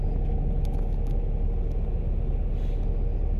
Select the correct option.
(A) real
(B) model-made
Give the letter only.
A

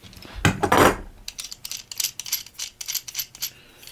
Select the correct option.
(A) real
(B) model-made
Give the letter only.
A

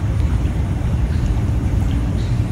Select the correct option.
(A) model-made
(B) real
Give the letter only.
A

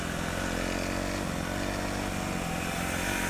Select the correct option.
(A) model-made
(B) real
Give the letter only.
B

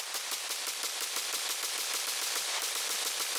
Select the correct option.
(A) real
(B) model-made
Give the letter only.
B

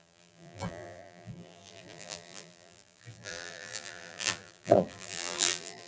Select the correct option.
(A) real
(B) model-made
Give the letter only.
B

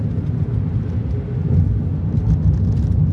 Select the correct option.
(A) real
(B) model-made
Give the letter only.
A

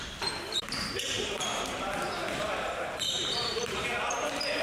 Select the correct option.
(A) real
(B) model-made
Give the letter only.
B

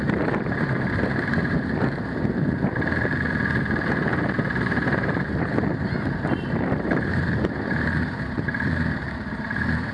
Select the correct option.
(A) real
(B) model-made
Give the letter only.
B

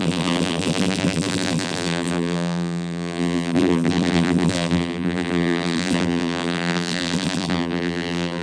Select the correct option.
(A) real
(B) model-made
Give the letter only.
B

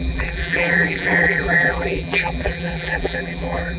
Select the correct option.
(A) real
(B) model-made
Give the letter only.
B